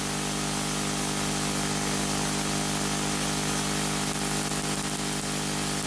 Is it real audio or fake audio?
real